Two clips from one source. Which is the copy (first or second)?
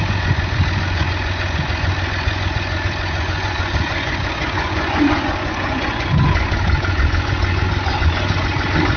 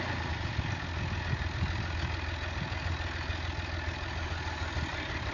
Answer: first